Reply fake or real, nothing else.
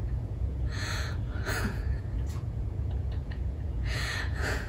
fake